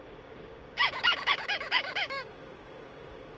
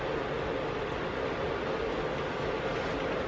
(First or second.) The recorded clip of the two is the second